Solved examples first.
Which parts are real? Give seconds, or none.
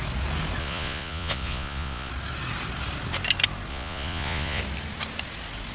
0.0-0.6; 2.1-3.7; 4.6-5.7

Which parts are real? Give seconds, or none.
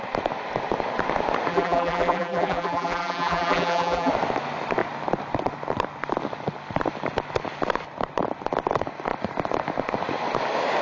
0.0-1.5; 4.1-10.8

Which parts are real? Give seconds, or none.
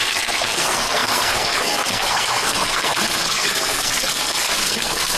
none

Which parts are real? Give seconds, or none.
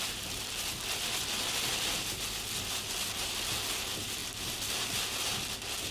0.0-5.9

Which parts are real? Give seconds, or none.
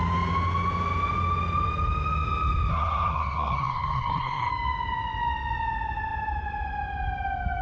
0.0-2.7; 4.5-7.6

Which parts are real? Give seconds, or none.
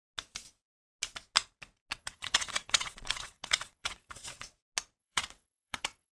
0.0-1.9; 4.5-5.0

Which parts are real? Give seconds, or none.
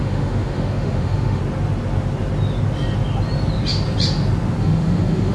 1.4-4.6